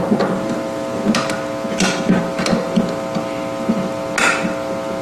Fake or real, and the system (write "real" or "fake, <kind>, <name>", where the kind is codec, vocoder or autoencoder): real